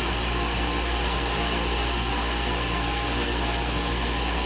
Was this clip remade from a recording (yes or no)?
yes